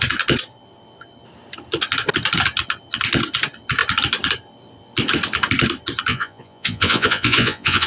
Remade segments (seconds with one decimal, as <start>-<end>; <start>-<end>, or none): 6.1-7.9